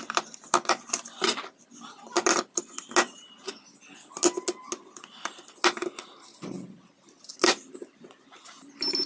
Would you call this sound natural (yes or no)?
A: yes